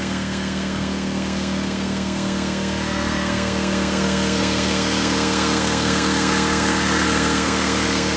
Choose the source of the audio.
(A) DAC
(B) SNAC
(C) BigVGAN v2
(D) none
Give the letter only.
B